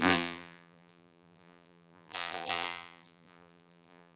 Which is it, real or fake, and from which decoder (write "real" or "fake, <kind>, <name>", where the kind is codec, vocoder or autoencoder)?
fake, vocoder, BigVGAN v2